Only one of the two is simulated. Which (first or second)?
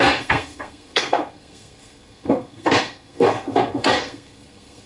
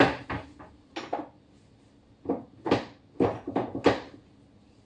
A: first